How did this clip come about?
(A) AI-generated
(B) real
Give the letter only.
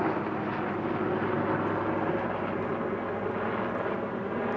B